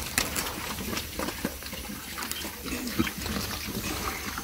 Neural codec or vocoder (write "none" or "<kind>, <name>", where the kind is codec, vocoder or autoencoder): none